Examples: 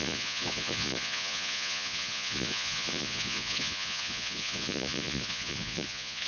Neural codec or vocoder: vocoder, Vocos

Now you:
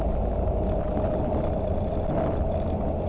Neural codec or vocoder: none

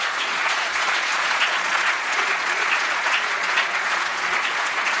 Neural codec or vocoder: vocoder, Vocos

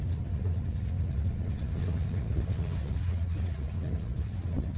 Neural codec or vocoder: vocoder, Vocos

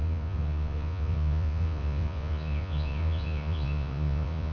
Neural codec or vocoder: vocoder, Vocos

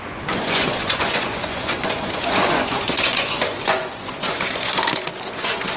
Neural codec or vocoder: vocoder, Vocos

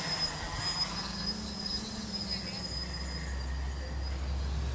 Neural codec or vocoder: none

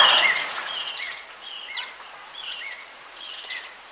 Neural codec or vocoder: vocoder, Vocos